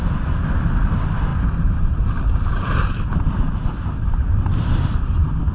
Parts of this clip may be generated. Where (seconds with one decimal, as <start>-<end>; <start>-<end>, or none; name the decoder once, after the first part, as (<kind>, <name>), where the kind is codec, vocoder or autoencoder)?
none